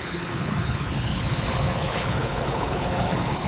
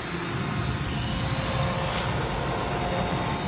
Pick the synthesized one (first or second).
first